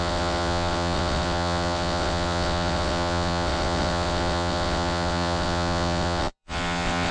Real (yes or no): no